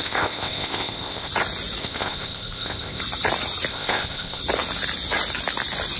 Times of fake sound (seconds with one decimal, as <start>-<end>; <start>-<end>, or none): 0.0-1.3; 1.8-3.0; 3.7-4.4